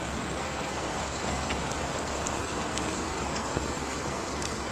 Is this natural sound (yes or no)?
no